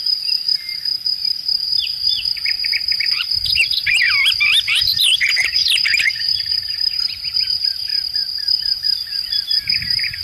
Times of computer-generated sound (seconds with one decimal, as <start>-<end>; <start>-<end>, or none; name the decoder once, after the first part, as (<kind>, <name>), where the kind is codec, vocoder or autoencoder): 0.0-0.9 (vocoder, BigVGAN v2); 1.8-7.9; 8.8-10.2